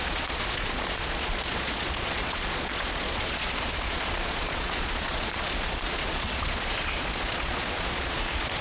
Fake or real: fake